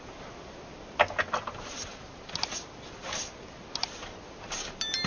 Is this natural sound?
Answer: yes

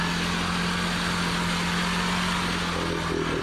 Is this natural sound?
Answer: yes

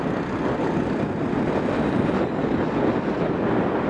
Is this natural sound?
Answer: yes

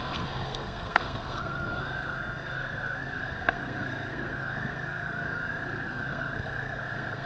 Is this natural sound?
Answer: no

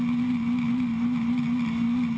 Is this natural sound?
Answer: yes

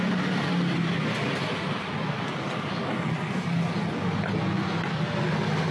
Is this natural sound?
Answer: yes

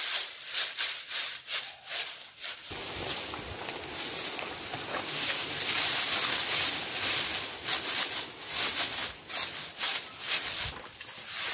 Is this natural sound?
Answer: yes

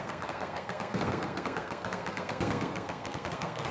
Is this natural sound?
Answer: no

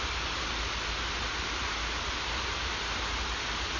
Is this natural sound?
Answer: yes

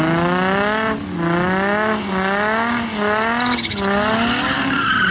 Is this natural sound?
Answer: yes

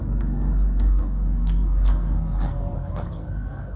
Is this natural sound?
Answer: no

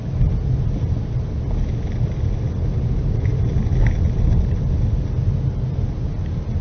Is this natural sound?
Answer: yes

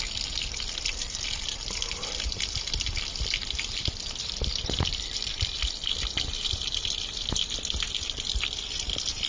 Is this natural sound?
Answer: no